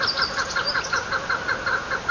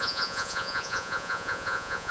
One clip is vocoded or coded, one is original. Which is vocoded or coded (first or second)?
second